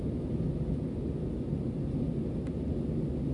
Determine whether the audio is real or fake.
real